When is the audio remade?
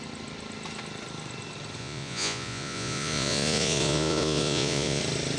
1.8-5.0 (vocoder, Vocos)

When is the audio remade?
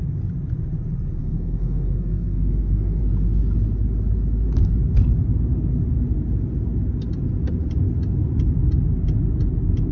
1.2-3.0 (codec, SNAC)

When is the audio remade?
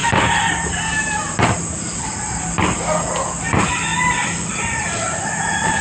none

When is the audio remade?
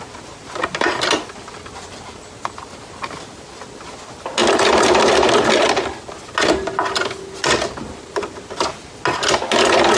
none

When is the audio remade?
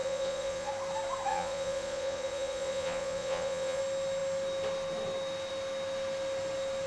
0.0-0.7 (vocoder, Vocos); 1.3-3.8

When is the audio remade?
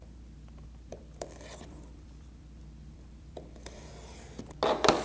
0.9-3.9 (vocoder, BigVGAN v2)